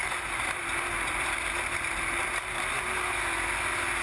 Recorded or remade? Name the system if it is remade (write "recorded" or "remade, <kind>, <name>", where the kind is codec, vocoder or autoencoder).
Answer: recorded